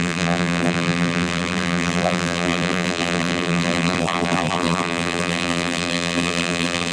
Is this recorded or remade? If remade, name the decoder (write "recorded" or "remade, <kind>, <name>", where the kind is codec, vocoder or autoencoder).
remade, vocoder, BigVGAN v2